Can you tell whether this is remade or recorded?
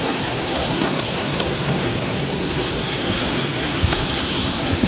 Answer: remade